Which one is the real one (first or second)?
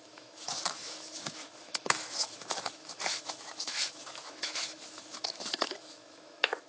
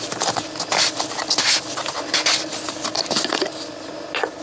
second